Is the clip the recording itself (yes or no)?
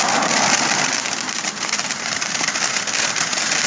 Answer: yes